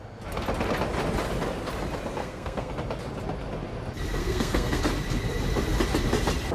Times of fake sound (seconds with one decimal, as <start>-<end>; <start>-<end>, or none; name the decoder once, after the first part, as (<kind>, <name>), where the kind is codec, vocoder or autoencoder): 2.2-2.7 (codec, SNAC); 4.2-4.8